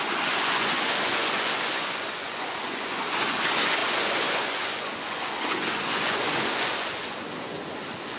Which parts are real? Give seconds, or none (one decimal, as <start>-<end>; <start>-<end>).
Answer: none